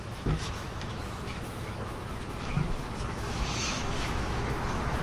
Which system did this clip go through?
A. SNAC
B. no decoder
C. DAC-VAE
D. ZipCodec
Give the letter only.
C